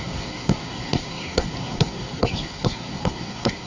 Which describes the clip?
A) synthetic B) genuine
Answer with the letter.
A